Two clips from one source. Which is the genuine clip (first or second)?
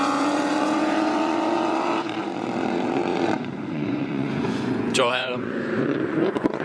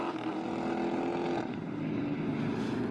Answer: second